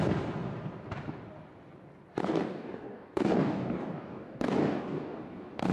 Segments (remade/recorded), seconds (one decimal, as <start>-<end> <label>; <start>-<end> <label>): 0.0-2.2 recorded; 2.2-5.7 remade